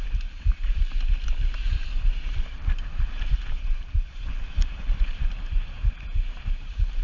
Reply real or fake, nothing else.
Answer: fake